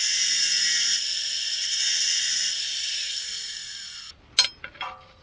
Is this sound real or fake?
real